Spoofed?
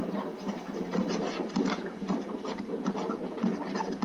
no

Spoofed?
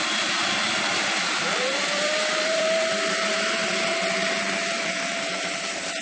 yes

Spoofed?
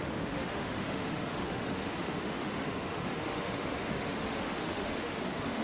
yes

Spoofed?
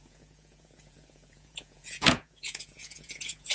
yes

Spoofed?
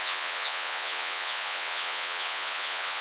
yes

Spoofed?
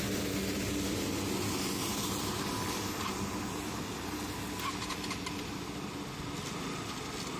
no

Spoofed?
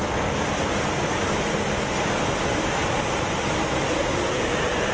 no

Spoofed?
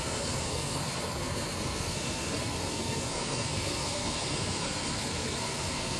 yes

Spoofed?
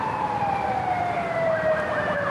yes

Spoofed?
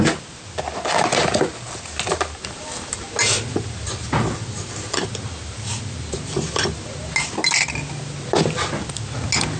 no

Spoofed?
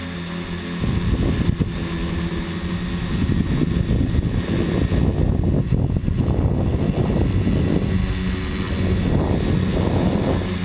no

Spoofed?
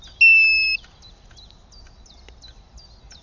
no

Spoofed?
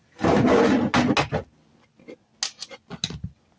no